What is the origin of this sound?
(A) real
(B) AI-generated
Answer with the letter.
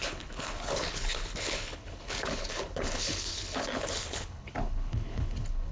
B